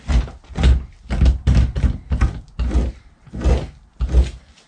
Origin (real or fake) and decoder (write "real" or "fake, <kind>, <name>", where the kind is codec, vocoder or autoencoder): real